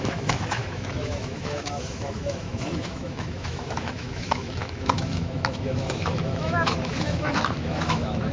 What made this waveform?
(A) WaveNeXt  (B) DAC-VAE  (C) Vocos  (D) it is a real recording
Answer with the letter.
B